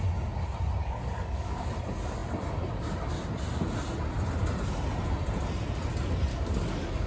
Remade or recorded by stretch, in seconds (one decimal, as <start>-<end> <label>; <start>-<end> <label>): 0.0-0.8 recorded; 0.8-1.6 remade; 1.6-6.3 recorded; 6.3-7.1 remade